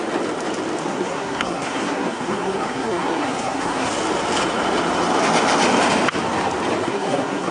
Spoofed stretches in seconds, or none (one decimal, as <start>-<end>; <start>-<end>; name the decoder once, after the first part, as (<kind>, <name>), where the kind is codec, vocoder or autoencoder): 0.8-3.9 (codec, SNAC); 6.8-7.5